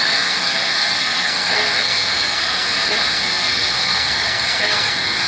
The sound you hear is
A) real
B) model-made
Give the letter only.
B